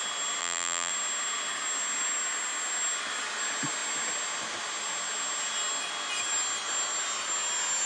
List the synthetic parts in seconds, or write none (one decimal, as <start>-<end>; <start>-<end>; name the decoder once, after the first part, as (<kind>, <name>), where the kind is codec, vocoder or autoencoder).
0.4-0.9 (vocoder, BigVGAN v2)